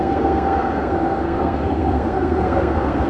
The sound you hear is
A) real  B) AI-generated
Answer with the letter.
B